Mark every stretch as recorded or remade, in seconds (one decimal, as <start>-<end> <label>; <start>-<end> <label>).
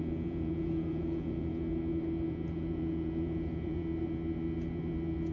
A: 0.0-1.5 remade; 1.5-2.5 recorded; 2.5-3.8 remade; 3.8-5.3 recorded